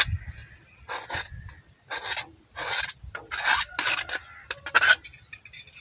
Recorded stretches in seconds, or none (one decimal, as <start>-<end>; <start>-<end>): 0.0-5.8